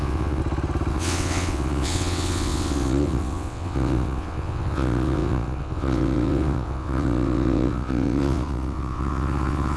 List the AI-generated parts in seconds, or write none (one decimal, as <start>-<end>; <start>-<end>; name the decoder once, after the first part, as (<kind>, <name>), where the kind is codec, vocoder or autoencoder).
0.0-0.4 (vocoder, WaveNeXt); 0.9-9.8